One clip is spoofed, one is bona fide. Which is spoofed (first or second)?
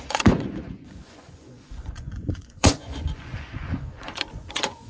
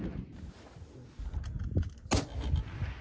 first